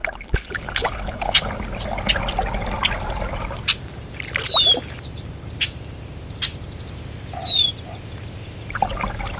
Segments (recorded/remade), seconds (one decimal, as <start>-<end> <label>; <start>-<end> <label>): 0.0-1.5 remade; 1.5-9.4 recorded